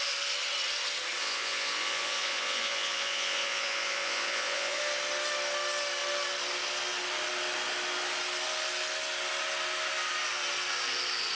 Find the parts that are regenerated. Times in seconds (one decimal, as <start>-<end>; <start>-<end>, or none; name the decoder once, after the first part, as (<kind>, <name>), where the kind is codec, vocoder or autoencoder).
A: 1.2-4.8 (vocoder, Vocos)

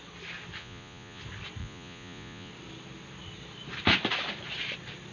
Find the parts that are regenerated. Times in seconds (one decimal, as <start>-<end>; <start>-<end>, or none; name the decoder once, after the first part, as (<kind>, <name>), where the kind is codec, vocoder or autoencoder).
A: 0.6-1.2 (vocoder, Vocos); 1.6-2.5

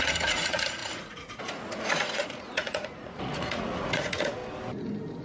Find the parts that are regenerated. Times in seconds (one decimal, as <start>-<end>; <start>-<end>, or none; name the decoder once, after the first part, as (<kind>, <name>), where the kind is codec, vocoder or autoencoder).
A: 0.0-4.4 (vocoder, Vocos)

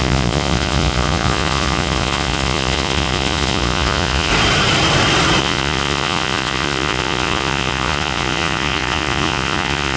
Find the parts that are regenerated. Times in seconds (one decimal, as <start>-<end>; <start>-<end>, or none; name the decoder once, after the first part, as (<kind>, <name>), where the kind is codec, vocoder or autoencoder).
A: 0.0-4.3 (vocoder, Vocos); 5.4-10.0